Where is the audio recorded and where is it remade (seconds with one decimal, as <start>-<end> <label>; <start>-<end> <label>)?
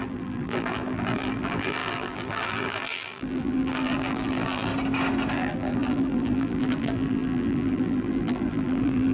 0.0-4.7 remade; 4.7-5.3 recorded; 5.3-9.1 remade